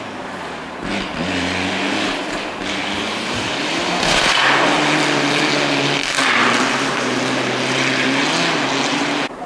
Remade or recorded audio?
recorded